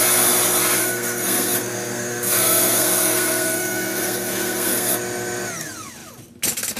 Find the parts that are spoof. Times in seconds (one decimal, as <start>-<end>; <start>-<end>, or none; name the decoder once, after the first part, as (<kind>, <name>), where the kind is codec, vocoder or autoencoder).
0.8-4.9 (codec, SNAC)